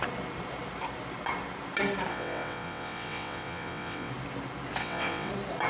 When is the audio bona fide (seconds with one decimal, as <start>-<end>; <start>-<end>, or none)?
0.0-2.1; 4.1-4.8; 5.3-5.7